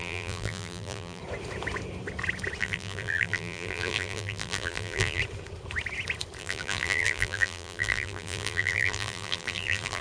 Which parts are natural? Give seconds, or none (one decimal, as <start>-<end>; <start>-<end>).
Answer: 1.2-2.6; 5.2-6.4